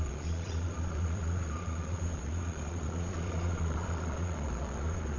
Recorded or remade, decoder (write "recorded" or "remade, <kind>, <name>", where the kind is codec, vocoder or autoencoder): remade, vocoder, Vocos